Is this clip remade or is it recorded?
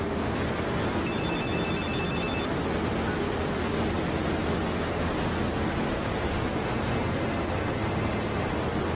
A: recorded